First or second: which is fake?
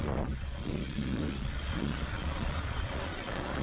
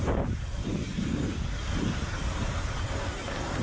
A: first